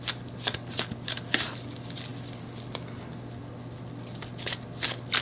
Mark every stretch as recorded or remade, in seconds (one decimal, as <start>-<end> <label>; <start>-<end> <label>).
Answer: 0.0-5.2 recorded